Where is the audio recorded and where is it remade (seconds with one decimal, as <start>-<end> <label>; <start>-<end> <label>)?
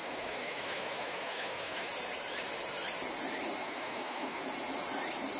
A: 0.0-1.9 remade; 1.9-3.6 recorded; 3.6-4.4 remade; 4.4-5.4 recorded